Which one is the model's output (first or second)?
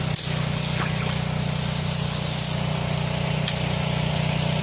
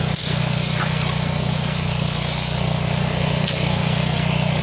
second